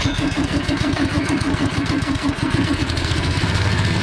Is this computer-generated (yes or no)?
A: yes